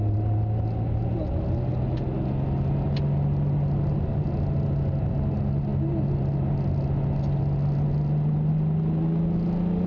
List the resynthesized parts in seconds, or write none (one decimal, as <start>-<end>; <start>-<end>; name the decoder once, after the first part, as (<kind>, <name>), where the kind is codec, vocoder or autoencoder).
none